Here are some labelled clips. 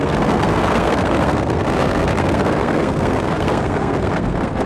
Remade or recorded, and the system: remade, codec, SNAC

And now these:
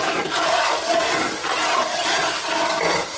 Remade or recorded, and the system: recorded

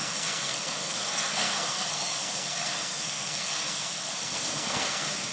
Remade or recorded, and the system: remade, codec, SNAC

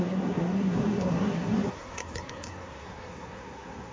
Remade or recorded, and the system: remade, codec, SNAC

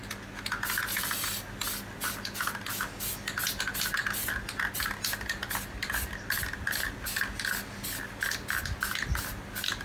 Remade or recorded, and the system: recorded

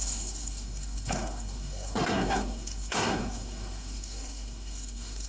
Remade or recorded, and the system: remade, codec, SNAC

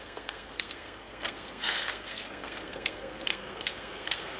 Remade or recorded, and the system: remade, codec, SNAC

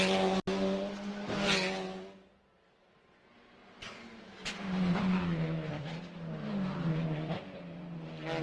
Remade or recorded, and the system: recorded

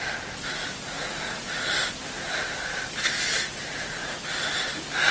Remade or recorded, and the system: recorded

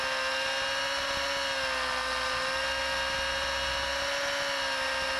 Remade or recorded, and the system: recorded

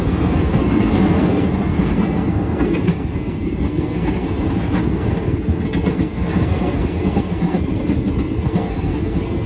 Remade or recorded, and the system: remade, codec, SNAC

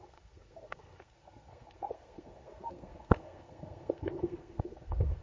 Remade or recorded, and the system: remade, codec, SNAC